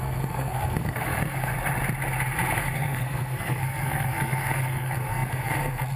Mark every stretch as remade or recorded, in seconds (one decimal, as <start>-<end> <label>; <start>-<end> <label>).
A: 0.0-1.5 remade; 1.5-2.6 recorded; 2.6-6.0 remade